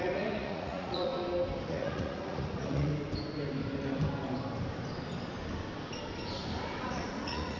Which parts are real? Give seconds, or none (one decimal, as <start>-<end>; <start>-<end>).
1.1-1.7; 2.9-6.8